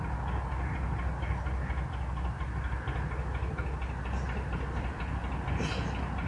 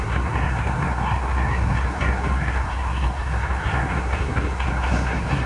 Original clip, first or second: first